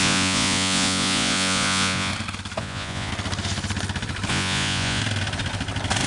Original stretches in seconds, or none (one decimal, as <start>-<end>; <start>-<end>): 2.1-2.6; 3.1-4.3; 5.0-6.1